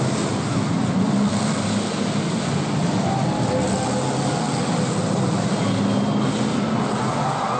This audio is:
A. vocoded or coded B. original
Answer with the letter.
B